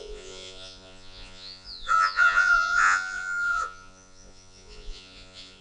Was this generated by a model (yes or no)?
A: yes